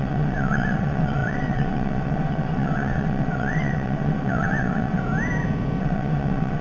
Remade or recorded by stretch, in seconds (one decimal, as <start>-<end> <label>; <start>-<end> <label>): 0.0-5.0 remade; 5.0-5.8 recorded; 5.8-6.6 remade